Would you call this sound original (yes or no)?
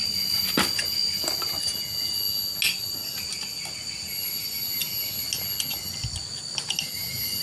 yes